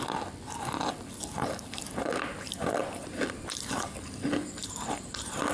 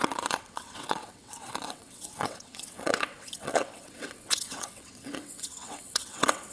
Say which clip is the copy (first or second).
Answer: second